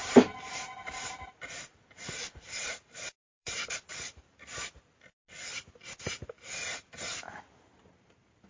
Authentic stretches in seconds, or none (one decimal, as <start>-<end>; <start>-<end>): 1.4-2.2; 3.9-8.5